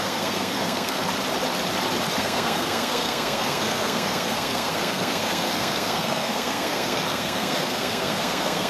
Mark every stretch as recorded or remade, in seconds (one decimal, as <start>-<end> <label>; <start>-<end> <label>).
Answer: 0.0-1.0 remade; 1.0-2.2 recorded; 2.2-8.7 remade